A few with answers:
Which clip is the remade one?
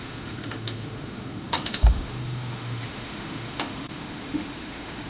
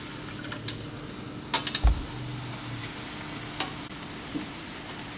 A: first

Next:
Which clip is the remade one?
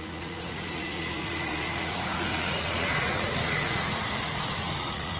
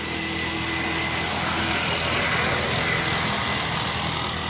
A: first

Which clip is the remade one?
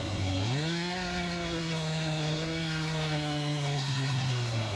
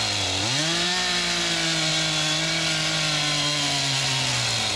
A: first